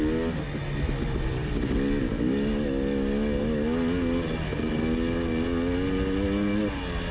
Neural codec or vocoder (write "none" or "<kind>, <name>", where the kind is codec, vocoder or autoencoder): none